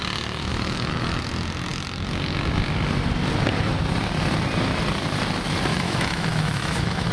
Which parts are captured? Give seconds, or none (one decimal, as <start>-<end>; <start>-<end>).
0.0-0.5; 1.2-5.7